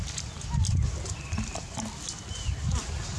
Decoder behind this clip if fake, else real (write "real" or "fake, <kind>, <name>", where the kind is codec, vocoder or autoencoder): real